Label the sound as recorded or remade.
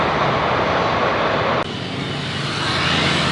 recorded